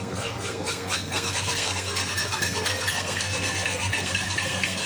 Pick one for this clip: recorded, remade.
remade